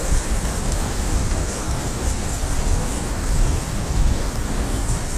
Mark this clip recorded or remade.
remade